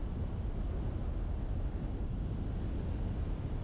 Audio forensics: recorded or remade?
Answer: recorded